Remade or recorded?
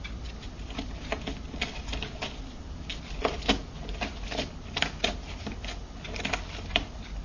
recorded